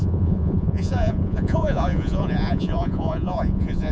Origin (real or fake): fake